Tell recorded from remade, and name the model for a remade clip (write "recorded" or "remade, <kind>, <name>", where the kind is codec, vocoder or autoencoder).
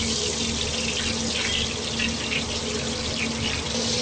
recorded